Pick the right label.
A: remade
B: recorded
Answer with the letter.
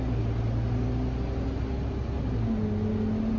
B